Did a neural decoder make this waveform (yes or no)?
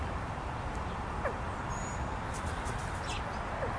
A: no